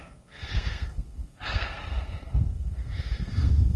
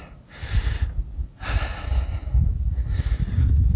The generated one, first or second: first